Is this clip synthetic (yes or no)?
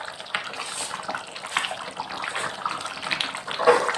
no